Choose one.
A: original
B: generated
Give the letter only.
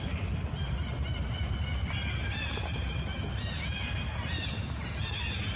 A